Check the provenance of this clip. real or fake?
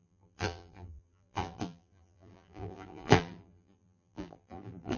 fake